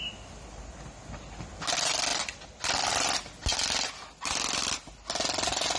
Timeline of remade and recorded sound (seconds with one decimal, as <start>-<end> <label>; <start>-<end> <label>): 0.0-5.8 recorded